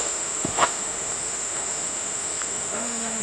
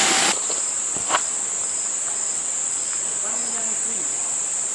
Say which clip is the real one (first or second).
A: second